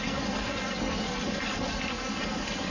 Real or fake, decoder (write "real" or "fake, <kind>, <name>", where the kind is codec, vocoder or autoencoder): fake, codec, SNAC